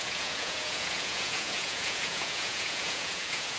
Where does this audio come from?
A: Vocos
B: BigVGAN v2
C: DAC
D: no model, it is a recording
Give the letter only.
A